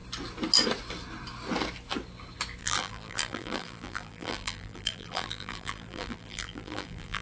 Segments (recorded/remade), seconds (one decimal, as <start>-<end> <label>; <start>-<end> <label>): 0.0-2.6 recorded; 2.6-7.2 remade